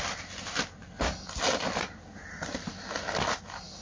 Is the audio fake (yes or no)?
no